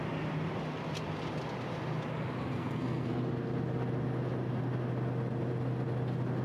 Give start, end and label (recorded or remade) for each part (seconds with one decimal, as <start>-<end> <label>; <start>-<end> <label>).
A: 0.0-2.5 recorded; 2.5-3.1 remade; 3.1-6.4 recorded